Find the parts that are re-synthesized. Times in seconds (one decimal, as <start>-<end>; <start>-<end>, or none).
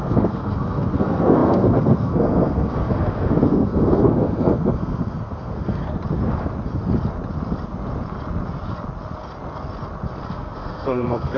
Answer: 0.0-5.8; 10.3-11.4